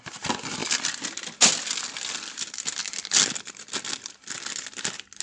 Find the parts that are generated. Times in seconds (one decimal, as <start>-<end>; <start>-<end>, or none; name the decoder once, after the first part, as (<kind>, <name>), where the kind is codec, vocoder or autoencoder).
2.8-3.7 (vocoder, BigVGAN v2)